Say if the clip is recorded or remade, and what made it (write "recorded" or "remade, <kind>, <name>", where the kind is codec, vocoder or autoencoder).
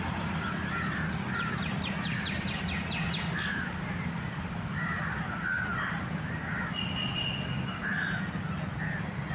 recorded